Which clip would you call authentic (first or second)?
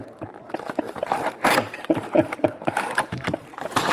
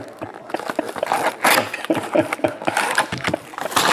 second